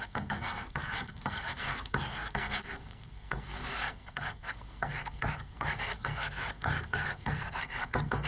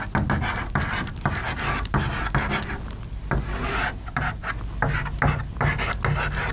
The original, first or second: second